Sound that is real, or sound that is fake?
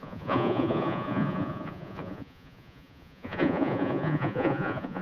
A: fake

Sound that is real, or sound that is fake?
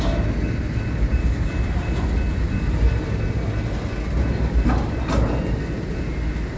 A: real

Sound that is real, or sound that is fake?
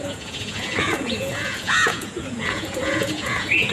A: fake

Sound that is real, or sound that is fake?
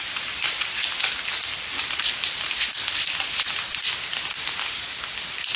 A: real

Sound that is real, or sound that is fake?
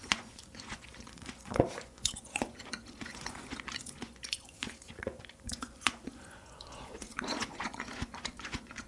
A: fake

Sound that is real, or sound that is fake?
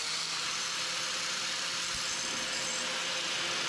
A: real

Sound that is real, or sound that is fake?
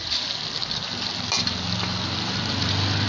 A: real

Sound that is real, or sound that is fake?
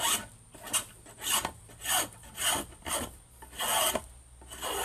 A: real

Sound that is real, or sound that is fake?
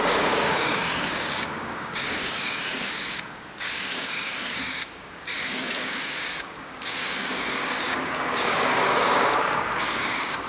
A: fake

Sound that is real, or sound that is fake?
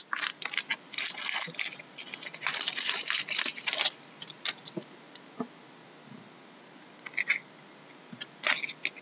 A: real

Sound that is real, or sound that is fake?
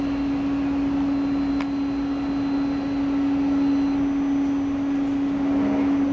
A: real